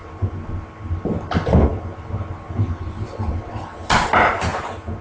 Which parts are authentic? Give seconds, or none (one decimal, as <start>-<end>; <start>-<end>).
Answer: 0.0-4.5